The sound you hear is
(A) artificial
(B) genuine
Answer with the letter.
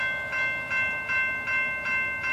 B